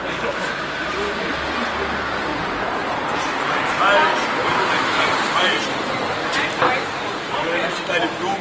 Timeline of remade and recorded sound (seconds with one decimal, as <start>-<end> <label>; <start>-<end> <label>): 0.0-2.3 recorded; 2.3-3.8 remade; 3.8-8.4 recorded